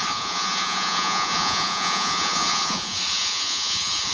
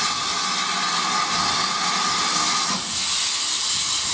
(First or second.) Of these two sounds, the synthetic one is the first